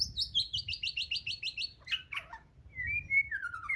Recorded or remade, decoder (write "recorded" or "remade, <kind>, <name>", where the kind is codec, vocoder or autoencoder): recorded